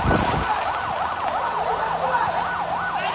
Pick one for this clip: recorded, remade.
recorded